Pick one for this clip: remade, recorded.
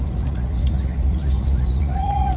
remade